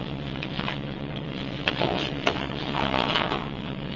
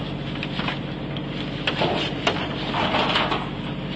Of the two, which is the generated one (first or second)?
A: first